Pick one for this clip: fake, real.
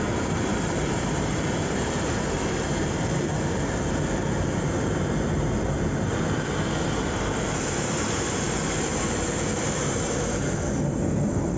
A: fake